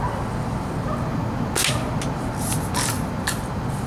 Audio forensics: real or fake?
real